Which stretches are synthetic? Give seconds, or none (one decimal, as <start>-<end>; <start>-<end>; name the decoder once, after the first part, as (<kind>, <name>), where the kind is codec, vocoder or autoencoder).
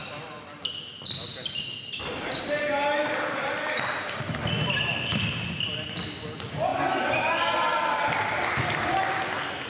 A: none